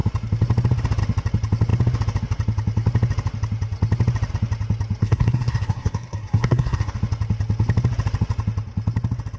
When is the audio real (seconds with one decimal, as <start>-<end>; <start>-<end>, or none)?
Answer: 0.0-5.0; 6.9-9.4